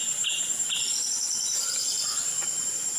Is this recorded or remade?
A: remade